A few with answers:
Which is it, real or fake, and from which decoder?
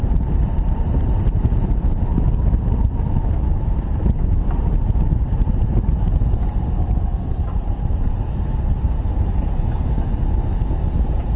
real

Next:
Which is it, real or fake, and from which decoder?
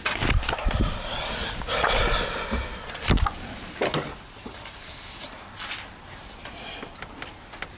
real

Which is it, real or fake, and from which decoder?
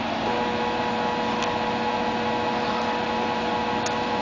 real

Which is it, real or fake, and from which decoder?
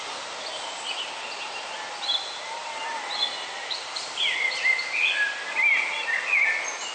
real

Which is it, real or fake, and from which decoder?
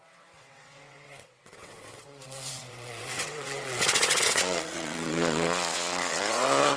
fake, vocoder, WaveNeXt